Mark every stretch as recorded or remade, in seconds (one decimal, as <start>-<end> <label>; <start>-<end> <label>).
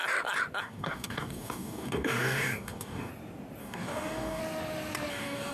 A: 0.0-0.6 recorded; 0.6-3.1 remade; 3.1-3.6 recorded; 3.6-4.4 remade; 4.4-5.1 recorded; 5.1-5.5 remade